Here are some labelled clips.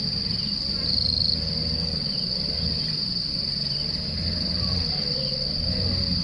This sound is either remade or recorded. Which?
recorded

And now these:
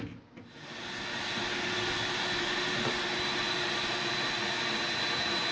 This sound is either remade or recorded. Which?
recorded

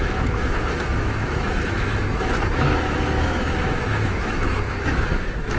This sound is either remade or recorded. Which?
remade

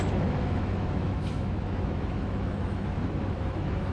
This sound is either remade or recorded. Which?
remade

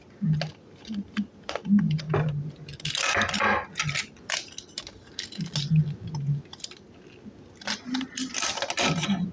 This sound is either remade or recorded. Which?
recorded